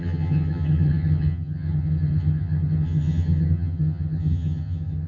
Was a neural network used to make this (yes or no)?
yes